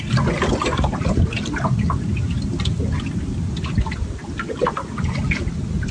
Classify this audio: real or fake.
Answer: real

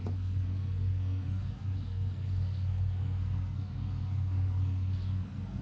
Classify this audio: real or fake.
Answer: fake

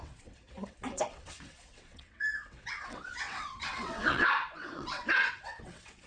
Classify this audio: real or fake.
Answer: fake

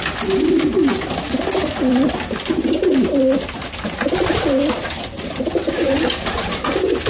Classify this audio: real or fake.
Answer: real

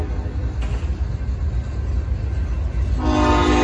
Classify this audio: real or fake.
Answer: real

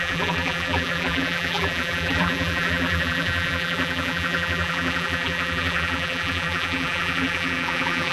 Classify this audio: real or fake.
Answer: fake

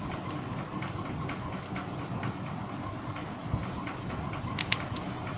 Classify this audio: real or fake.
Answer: real